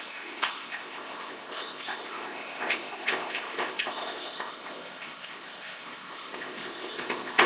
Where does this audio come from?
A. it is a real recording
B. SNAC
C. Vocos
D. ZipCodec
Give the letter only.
D